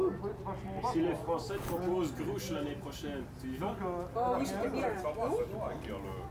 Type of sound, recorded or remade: recorded